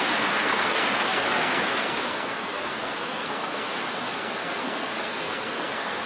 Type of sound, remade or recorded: remade